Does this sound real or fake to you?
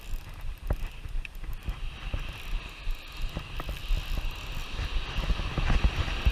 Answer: real